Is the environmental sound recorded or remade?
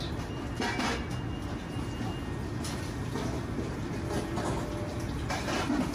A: recorded